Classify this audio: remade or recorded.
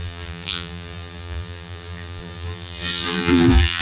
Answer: remade